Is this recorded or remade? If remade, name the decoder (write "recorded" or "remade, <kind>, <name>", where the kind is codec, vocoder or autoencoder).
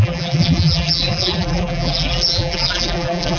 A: remade, vocoder, BigVGAN v2